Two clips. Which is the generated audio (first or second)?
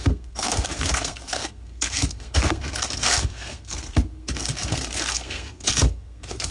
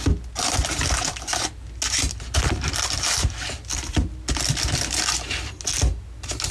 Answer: first